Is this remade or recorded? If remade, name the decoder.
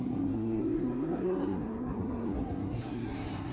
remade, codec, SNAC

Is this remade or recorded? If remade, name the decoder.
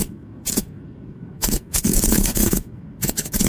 remade, codec, SNAC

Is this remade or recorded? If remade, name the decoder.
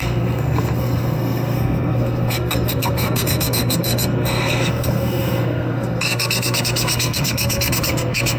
remade, codec, SNAC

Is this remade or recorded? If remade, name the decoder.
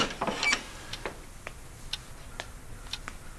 recorded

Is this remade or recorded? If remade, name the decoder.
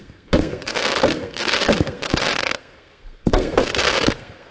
remade, codec, SNAC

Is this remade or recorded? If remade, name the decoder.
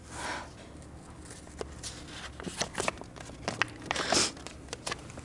recorded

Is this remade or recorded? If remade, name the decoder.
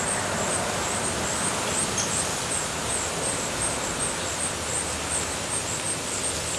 recorded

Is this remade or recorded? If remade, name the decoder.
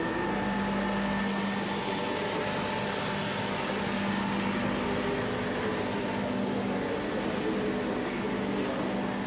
recorded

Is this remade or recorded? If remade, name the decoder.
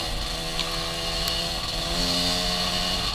recorded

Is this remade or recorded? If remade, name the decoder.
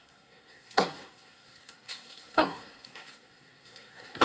remade, codec, SNAC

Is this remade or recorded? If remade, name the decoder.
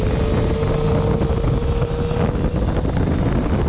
recorded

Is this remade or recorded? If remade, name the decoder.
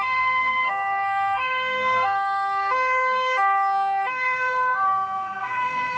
remade, codec, SNAC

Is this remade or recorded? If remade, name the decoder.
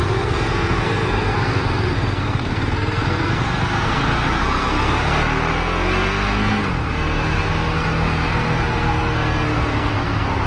remade, codec, SNAC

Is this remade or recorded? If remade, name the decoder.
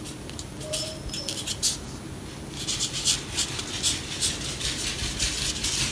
recorded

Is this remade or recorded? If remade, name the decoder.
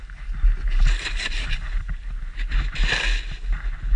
recorded